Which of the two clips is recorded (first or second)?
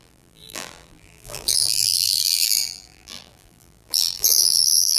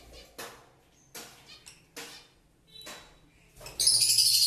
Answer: second